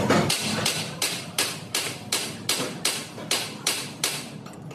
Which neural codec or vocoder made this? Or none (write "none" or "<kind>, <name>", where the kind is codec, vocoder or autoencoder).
none